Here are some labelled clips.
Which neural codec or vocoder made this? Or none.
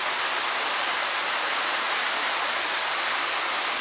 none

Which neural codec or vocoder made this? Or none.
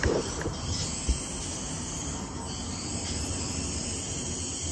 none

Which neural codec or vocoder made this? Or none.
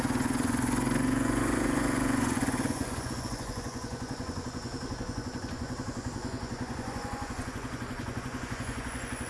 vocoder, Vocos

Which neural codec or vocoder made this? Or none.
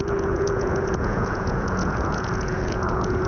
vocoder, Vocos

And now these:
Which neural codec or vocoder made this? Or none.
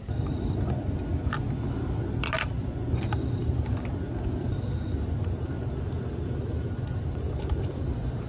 none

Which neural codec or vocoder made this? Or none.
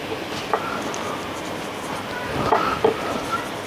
none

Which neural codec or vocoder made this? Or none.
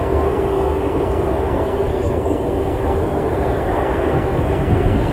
codec, SNAC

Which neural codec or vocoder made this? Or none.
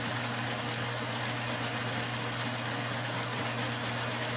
none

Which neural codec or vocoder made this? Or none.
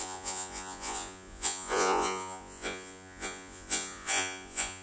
vocoder, Vocos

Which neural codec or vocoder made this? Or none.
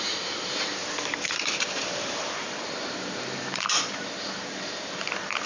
vocoder, BigVGAN v2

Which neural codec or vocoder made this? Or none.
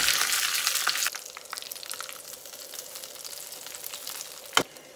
none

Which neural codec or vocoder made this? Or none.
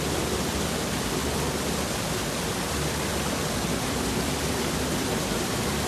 none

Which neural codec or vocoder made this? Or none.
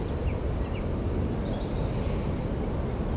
none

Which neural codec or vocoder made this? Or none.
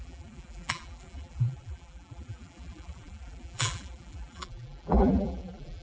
vocoder, BigVGAN v2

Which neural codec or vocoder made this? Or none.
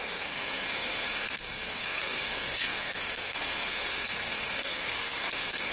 codec, SNAC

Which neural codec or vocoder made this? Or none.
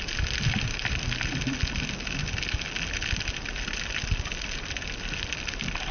none